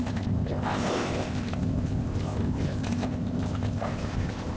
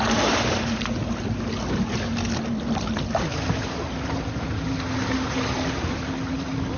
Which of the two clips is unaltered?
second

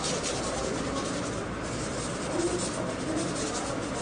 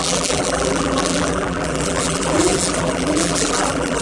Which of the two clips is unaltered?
first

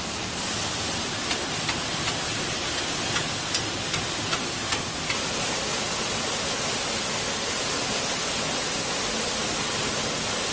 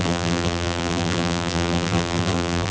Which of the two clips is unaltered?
first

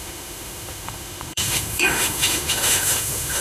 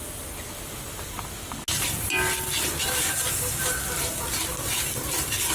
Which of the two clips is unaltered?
second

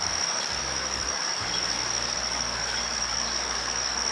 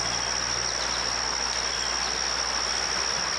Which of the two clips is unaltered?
second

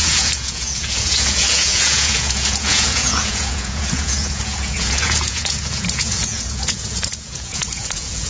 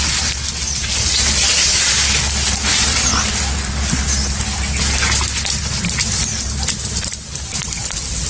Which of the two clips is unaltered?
second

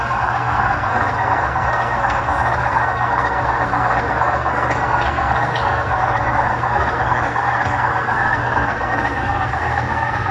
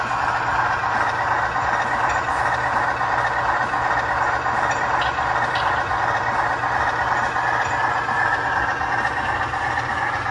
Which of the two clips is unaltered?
second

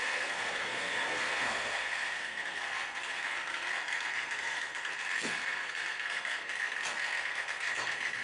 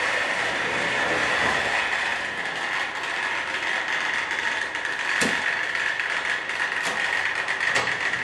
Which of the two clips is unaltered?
second